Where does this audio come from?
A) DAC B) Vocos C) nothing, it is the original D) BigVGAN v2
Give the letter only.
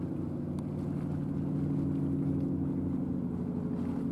C